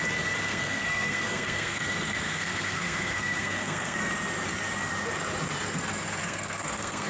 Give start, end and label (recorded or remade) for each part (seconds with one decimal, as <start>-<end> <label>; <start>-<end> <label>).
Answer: 0.0-0.5 recorded; 0.5-4.1 remade; 4.1-6.2 recorded; 6.2-7.1 remade

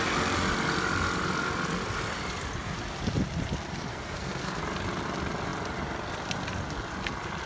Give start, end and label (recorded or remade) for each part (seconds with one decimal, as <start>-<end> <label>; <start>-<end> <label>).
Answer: 0.0-3.9 recorded; 3.9-4.6 remade; 4.6-7.5 recorded

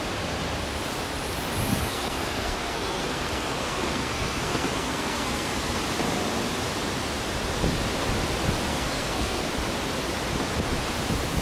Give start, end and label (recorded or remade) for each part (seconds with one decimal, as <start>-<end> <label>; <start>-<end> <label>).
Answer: 0.0-1.7 recorded; 1.7-5.8 remade; 5.8-8.7 recorded; 8.7-9.5 remade; 9.5-11.4 recorded

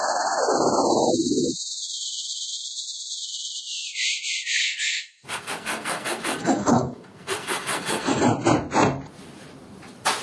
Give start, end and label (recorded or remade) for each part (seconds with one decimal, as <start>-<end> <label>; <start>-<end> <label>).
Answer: 0.0-4.6 recorded; 4.6-8.2 remade; 8.2-10.2 recorded

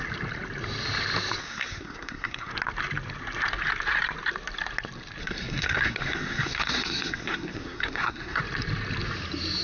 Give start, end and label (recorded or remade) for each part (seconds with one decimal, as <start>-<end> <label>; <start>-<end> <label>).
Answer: 0.0-1.4 recorded; 1.4-2.5 remade; 2.5-5.2 recorded; 5.2-8.4 remade; 8.4-9.6 recorded

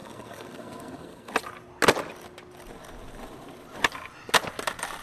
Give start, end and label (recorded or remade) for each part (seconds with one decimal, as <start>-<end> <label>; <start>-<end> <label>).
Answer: 0.0-1.3 remade; 1.3-5.0 recorded

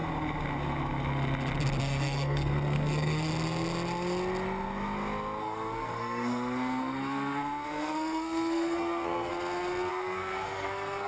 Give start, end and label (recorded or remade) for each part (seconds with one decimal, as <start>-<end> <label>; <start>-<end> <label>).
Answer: 0.0-1.8 recorded; 1.8-3.3 remade; 3.3-5.4 recorded; 5.4-9.3 remade; 9.3-9.9 recorded; 9.9-11.1 remade

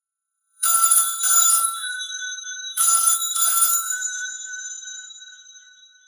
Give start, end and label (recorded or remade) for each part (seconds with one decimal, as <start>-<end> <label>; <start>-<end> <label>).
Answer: 0.0-6.1 remade